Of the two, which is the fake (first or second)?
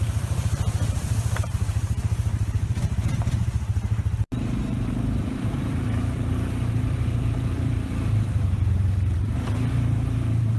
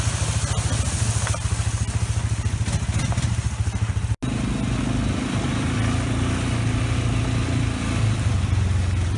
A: first